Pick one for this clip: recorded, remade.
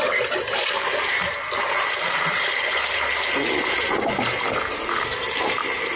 remade